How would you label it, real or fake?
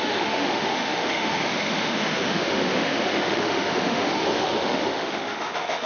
fake